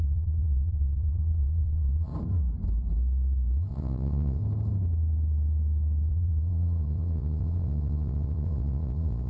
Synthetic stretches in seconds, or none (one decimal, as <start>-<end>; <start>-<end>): 0.0-2.1; 3.7-4.4; 6.1-9.3